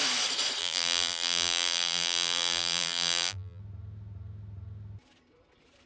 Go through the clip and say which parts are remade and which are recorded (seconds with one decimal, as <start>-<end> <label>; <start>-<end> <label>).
0.0-0.6 recorded; 0.6-3.6 remade; 3.6-5.9 recorded